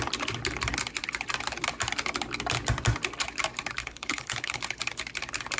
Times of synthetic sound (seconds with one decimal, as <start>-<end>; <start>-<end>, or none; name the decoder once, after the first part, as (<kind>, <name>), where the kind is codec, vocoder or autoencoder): 3.8-4.6 (codec, HILCodec)